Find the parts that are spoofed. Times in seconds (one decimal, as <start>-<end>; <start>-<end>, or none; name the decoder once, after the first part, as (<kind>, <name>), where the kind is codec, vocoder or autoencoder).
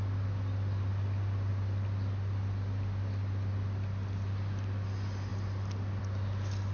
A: none